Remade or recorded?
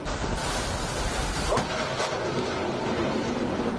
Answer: recorded